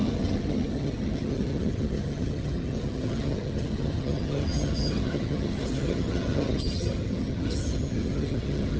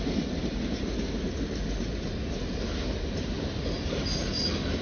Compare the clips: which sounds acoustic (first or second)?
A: second